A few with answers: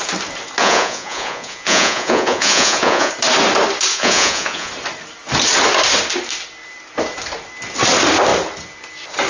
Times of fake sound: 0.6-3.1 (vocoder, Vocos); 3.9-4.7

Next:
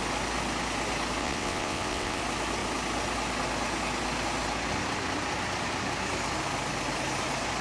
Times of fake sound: 1.2-2.2 (vocoder, WaveNeXt)

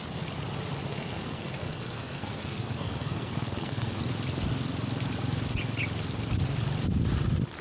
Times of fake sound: 0.9-4.0 (codec, SNAC)